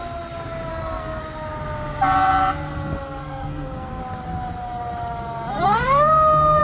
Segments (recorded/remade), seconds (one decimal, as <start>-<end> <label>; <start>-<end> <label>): 0.0-0.7 recorded; 0.7-1.2 remade; 1.2-3.2 recorded; 3.2-4.0 remade; 4.0-5.5 recorded; 5.5-6.6 remade